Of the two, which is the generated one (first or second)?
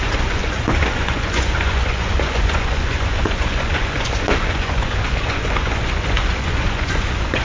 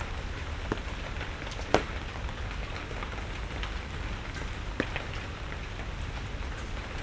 first